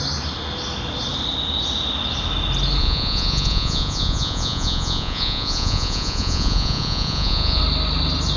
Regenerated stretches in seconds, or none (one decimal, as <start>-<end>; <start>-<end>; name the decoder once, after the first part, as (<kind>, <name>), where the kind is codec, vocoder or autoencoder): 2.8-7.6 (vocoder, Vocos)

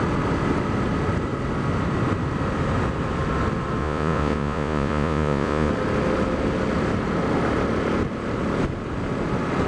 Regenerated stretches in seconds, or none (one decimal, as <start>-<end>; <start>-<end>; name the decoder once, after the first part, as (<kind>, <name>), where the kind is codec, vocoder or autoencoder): 3.8-5.7 (vocoder, Vocos)

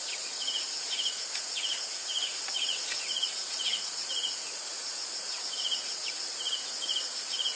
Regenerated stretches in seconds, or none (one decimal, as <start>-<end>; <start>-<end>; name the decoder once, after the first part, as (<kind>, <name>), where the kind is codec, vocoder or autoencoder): 0.0-7.6 (vocoder, Vocos)

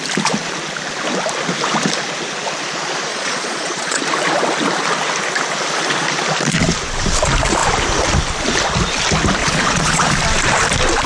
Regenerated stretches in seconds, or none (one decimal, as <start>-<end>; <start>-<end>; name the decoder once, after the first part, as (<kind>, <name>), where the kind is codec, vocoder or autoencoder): 3.1-4.0 (vocoder, Vocos); 9.4-10.1

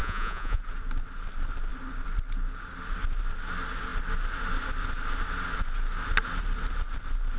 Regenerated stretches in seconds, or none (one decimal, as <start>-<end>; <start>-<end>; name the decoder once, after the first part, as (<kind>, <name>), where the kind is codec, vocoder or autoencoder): 0.0-0.6 (vocoder, Vocos)

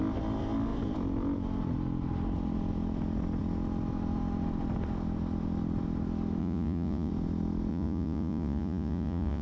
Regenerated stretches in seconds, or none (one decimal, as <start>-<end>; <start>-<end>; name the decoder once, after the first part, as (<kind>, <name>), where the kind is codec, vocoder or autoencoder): 6.4-7.1 (vocoder, Vocos); 7.7-9.4